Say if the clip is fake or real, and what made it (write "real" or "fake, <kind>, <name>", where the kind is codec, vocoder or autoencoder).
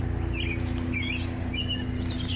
real